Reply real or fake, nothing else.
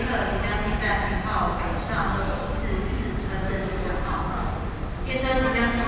real